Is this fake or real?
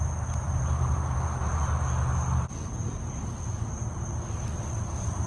real